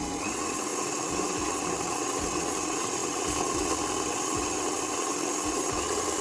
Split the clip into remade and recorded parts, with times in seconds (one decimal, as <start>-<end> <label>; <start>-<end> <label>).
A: 0.0-6.2 remade